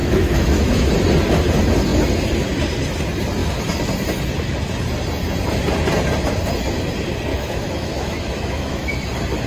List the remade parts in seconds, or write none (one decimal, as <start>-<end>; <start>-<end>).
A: 0.0-0.9; 7.3-8.9